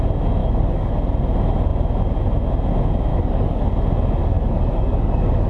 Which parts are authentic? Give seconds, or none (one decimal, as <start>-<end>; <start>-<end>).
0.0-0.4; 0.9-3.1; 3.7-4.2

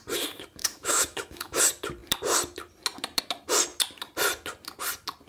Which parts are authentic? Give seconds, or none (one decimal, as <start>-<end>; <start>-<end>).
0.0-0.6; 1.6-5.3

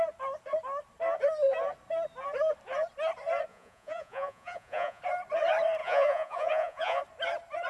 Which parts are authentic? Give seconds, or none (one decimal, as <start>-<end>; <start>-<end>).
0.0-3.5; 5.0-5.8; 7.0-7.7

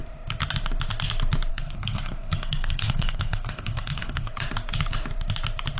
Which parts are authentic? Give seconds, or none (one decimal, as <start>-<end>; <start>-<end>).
0.0-1.5; 4.3-5.8

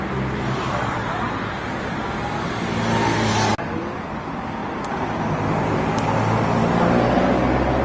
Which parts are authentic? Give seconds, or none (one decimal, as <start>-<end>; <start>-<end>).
0.0-7.8

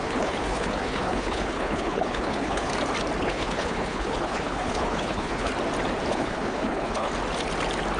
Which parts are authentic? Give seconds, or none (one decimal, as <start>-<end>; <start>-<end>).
2.7-3.2; 5.5-6.1; 7.1-8.0